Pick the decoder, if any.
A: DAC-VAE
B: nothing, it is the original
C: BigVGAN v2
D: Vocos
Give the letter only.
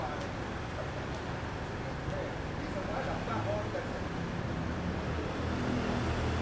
B